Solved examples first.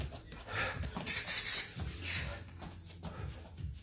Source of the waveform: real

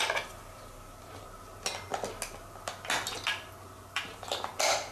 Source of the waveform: real